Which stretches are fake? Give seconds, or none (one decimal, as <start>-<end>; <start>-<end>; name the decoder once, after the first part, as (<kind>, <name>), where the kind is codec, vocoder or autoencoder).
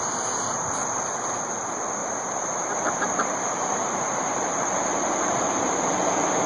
2.0-5.9 (vocoder, BigVGAN v2)